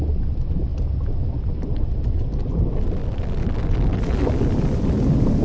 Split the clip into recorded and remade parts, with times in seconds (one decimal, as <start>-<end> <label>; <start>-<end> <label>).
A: 0.0-5.4 recorded